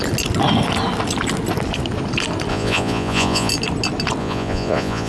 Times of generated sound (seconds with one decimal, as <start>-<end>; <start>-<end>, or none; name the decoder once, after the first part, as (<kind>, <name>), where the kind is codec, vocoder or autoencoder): 2.5-3.5 (vocoder, Vocos); 4.2-5.1

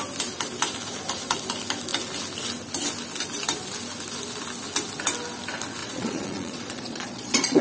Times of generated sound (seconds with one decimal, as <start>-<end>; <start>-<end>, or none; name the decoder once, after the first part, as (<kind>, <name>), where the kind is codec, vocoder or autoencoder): 5.8-7.6 (vocoder, Vocos)

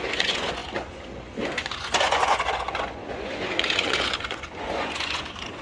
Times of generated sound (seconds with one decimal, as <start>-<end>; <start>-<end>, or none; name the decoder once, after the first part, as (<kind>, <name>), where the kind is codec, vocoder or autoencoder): 0.0-5.6 (vocoder, Vocos)

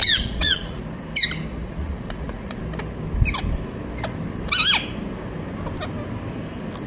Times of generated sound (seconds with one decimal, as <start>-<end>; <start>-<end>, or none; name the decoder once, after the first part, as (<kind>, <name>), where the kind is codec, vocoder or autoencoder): 0.0-0.8 (vocoder, Vocos); 1.6-2.6

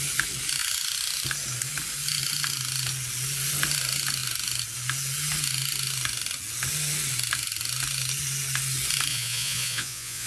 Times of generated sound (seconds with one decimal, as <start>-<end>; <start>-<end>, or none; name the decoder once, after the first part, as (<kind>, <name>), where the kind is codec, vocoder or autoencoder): 9.1-10.3 (vocoder, Vocos)

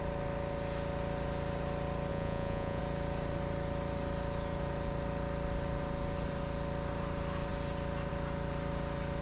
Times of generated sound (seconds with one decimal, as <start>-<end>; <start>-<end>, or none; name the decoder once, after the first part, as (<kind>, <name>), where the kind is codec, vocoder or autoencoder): 2.1-2.8 (vocoder, Vocos)